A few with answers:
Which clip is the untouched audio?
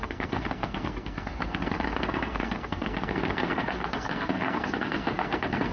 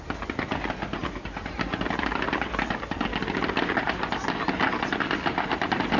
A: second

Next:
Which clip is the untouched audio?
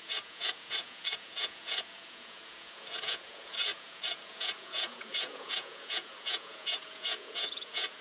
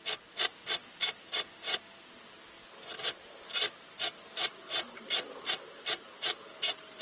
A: second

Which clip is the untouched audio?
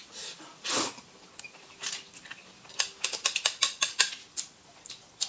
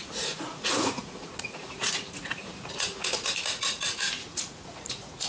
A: first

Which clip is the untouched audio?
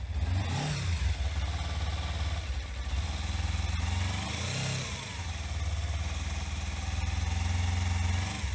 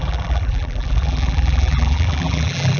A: first